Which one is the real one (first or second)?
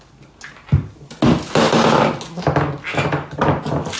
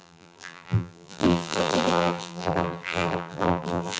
first